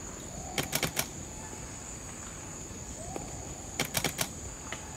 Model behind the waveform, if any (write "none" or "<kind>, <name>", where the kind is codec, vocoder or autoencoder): none